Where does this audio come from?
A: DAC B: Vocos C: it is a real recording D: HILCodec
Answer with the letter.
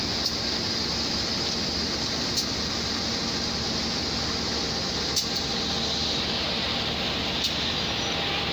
C